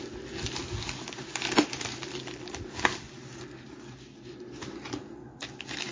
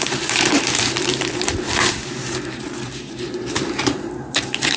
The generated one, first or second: second